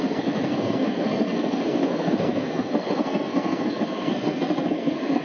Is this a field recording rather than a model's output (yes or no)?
no